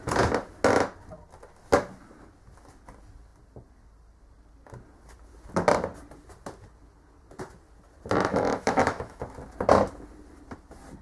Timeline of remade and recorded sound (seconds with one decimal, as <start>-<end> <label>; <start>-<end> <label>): 0.0-8.3 recorded; 8.3-9.2 remade; 9.2-11.0 recorded